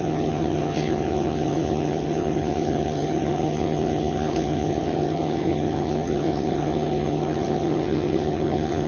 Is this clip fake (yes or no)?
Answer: yes